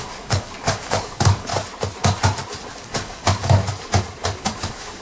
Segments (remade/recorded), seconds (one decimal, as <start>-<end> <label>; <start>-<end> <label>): 0.0-1.5 remade; 1.5-2.8 recorded; 2.8-3.6 remade; 3.6-4.4 recorded; 4.4-5.0 remade

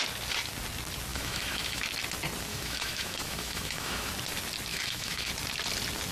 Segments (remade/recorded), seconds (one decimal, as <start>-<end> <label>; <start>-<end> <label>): 0.0-1.1 recorded; 1.1-1.8 remade; 1.8-2.5 recorded; 2.5-4.1 remade; 4.1-4.7 recorded; 4.7-5.3 remade; 5.3-6.1 recorded

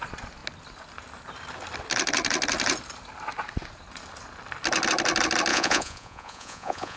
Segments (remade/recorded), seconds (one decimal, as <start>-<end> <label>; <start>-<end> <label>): 0.0-5.5 recorded; 5.5-7.0 remade